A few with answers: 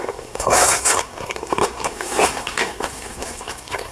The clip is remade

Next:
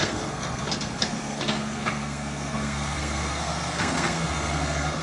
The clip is remade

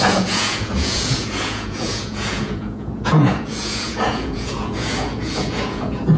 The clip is remade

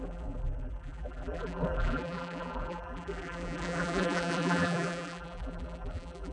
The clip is remade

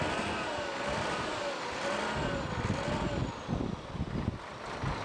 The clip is recorded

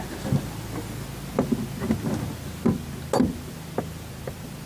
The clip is recorded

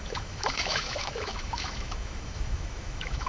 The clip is remade